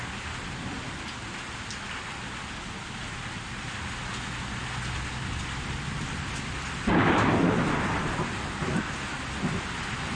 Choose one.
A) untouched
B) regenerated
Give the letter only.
A